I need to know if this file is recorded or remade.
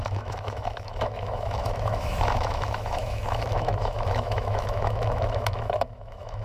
remade